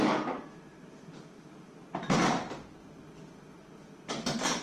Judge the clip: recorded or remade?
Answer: recorded